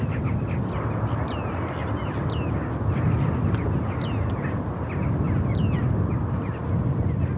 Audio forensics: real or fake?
real